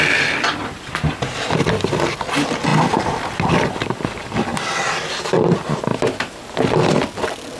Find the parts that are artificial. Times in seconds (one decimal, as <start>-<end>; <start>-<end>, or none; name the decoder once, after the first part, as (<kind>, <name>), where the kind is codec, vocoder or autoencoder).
0.0-2.7 (vocoder, BigVGAN v2); 3.5-4.5; 5.3-7.6